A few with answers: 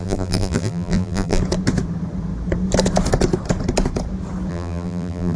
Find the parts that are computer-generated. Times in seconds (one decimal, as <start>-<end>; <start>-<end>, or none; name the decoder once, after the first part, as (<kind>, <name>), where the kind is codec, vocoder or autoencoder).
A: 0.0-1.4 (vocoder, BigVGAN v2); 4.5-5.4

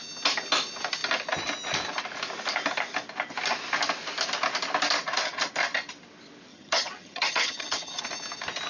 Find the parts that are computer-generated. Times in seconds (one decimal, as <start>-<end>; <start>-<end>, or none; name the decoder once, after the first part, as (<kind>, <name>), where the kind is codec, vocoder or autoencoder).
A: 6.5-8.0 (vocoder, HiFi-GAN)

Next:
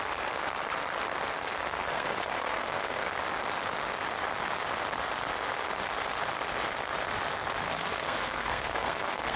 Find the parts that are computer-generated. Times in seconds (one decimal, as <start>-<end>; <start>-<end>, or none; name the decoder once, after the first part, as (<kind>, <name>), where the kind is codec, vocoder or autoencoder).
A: 1.9-3.1 (codec, SNAC); 7.7-9.4

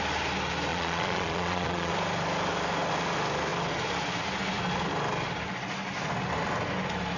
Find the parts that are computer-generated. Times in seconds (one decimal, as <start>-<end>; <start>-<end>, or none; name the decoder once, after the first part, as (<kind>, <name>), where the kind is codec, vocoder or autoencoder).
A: 0.7-1.9 (vocoder, Vocos)